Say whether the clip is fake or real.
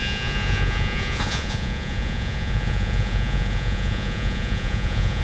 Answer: fake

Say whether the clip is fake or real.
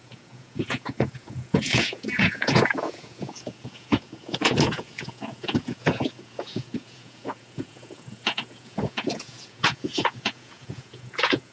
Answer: fake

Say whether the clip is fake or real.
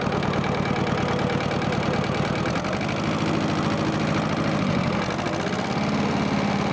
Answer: real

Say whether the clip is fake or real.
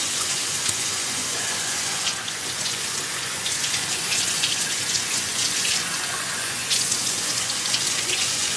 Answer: fake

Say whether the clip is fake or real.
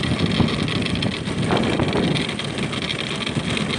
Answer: real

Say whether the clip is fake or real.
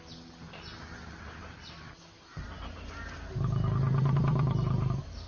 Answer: real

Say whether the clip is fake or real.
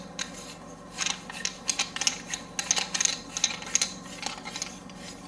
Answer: real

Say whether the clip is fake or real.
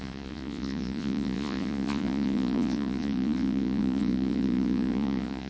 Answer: fake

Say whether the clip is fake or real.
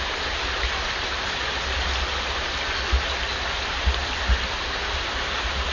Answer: real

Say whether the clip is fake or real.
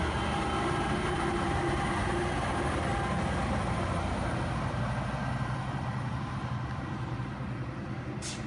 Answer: real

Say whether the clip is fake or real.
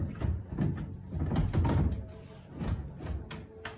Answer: real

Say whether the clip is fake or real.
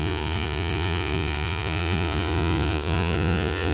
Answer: fake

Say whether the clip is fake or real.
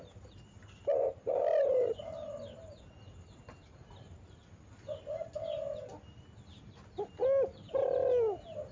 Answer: real